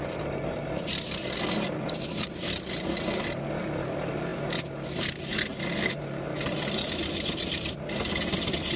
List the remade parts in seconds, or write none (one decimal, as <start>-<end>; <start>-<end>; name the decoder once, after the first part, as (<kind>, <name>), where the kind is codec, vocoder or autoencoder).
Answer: none

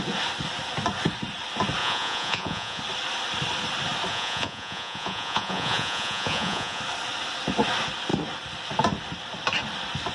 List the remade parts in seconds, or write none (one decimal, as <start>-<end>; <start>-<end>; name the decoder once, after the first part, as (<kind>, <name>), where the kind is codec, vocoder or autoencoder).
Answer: 1.8-2.8 (vocoder, Vocos); 4.1-6.8

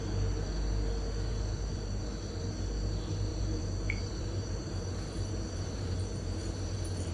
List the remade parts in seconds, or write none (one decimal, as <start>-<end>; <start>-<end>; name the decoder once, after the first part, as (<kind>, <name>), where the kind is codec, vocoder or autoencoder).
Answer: 1.3-2.0 (vocoder, BigVGAN v2); 3.3-7.1

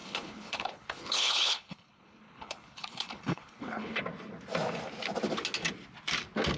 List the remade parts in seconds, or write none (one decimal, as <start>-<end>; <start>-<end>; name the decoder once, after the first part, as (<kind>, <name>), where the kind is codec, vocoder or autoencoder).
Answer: 0.0-4.0 (codec, HILCodec)